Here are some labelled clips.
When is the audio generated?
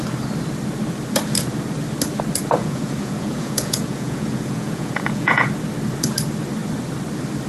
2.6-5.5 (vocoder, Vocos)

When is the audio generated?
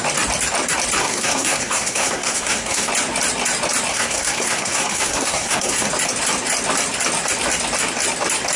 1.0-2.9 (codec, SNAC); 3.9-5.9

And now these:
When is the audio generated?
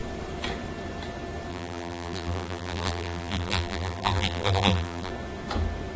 1.5-5.1 (vocoder, BigVGAN v2)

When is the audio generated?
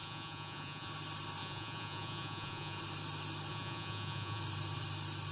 0.0-0.9 (vocoder, Vocos); 1.4-2.8; 3.5-4.4